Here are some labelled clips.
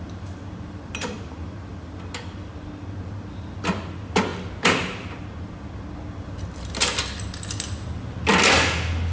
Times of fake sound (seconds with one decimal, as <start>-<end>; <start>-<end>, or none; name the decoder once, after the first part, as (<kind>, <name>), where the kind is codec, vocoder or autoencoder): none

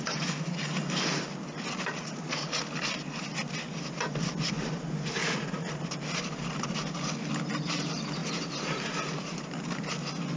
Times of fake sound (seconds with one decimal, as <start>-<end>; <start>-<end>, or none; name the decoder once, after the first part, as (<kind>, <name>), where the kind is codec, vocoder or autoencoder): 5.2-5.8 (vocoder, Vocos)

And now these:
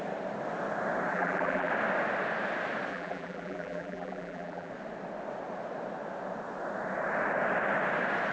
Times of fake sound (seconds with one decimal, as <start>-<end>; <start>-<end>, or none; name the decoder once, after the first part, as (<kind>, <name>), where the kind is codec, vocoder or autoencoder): 1.1-1.7 (vocoder, BigVGAN v2); 2.9-4.7

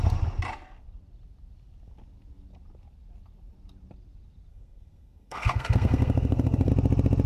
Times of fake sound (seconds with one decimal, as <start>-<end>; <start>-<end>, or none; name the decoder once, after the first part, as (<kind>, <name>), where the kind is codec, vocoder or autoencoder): 4.5-6.7 (codec, SNAC)

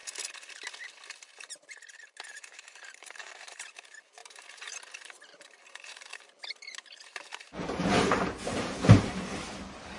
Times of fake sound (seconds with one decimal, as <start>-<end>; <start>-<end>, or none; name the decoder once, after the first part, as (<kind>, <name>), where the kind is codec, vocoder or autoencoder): 1.4-10.0 (vocoder, BigVGAN v2)

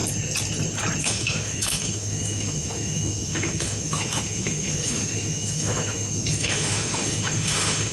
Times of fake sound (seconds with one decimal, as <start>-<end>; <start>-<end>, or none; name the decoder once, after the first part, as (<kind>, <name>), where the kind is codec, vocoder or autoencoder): 1.0-7.9 (autoencoder, DAC-VAE)

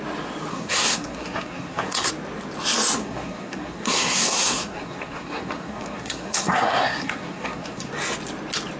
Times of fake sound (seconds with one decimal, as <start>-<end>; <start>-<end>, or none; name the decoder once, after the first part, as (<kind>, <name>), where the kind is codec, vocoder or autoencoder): 0.5-2.1 (codec, SNAC); 3.0-7.9

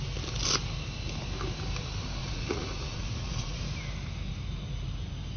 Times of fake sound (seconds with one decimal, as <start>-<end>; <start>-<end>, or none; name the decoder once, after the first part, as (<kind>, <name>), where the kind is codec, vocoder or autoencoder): 2.2-3.6 (vocoder, Vocos)